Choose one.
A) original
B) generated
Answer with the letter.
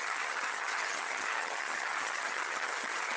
B